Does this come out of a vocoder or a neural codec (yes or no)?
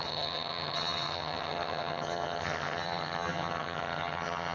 yes